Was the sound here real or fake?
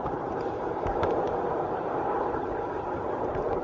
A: fake